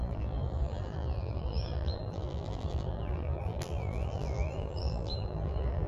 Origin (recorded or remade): remade